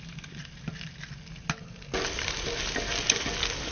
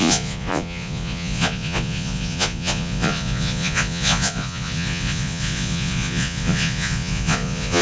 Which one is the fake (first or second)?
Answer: second